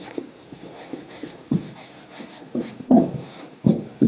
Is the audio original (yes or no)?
no